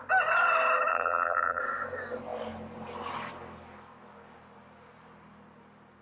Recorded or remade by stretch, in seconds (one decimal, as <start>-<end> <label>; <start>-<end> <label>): 0.0-0.9 recorded; 0.9-1.6 remade; 1.6-6.0 recorded